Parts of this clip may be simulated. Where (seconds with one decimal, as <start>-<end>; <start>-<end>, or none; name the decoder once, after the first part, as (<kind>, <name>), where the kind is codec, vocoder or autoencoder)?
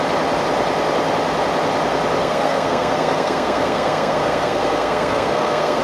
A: 2.2-5.8 (codec, SNAC)